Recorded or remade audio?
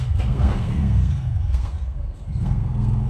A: remade